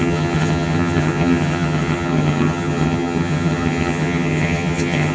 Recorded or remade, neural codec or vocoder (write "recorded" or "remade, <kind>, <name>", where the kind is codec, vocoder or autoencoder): remade, vocoder, HiFi-GAN